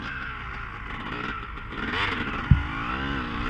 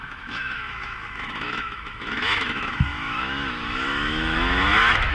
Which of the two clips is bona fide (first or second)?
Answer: first